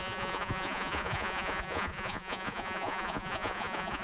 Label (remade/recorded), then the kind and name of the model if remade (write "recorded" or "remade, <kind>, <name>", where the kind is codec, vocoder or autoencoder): remade, vocoder, Vocos